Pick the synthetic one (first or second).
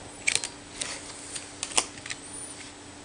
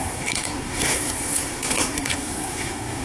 second